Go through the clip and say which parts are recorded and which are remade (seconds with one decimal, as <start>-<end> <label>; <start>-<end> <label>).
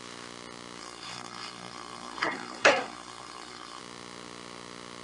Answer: 0.0-0.8 recorded; 0.8-3.8 remade; 3.8-5.0 recorded